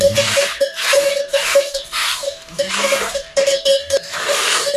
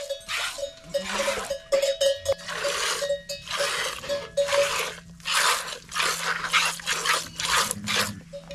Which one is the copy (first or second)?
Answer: first